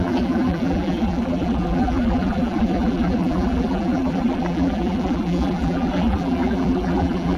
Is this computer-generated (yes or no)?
yes